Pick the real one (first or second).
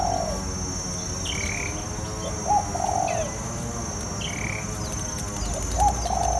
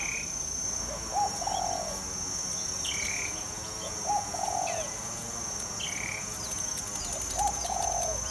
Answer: first